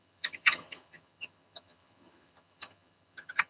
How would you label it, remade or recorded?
remade